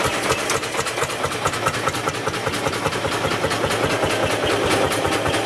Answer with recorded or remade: recorded